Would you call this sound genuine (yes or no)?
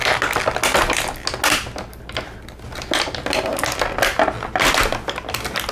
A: yes